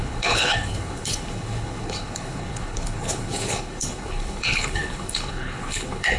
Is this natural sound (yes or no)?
no